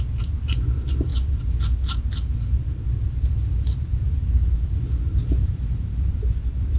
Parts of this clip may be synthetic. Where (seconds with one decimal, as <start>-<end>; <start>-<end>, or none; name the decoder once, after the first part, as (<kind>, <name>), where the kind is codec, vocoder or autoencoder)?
none